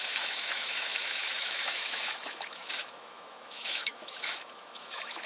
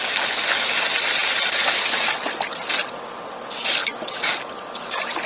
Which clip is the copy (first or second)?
first